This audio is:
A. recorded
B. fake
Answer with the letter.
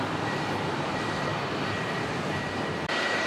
B